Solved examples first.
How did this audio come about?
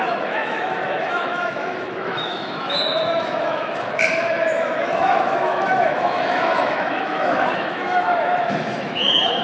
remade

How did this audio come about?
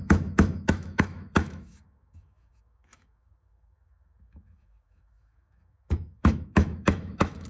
remade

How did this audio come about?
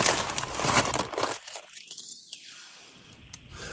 recorded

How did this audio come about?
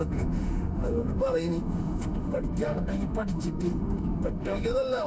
remade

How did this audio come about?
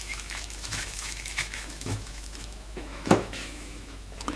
remade